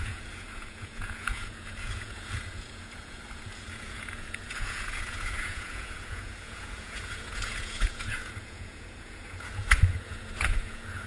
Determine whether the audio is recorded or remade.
remade